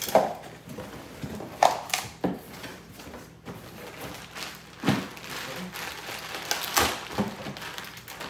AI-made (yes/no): no